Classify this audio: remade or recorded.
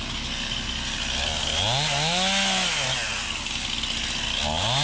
recorded